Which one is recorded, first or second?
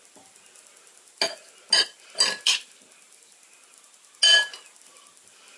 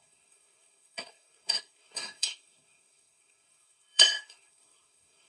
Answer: first